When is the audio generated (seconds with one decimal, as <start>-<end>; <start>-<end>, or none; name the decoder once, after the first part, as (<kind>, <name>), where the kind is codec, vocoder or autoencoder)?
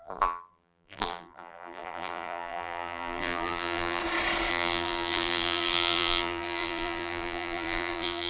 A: 0.0-4.0 (vocoder, BigVGAN v2); 4.5-8.3